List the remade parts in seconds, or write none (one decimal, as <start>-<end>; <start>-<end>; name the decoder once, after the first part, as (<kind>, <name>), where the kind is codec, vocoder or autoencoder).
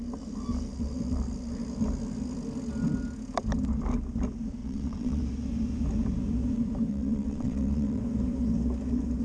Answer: 4.6-5.2 (vocoder, WaveNeXt); 6.9-8.0